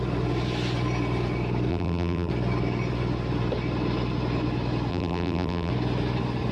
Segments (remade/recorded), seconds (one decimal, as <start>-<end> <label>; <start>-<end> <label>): 0.0-1.7 recorded; 1.7-2.3 remade; 2.3-4.9 recorded; 4.9-5.7 remade; 5.7-6.5 recorded